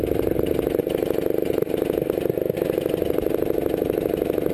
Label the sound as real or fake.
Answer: real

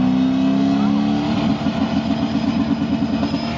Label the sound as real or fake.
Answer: real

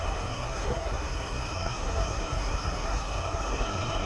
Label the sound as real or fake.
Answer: fake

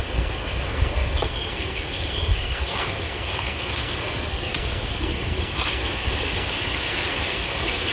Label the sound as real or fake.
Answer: fake